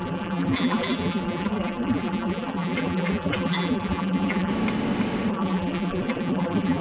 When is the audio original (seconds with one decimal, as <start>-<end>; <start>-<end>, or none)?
4.5-5.3